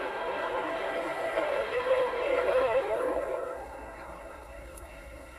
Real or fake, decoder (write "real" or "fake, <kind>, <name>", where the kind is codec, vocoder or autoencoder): fake, codec, SNAC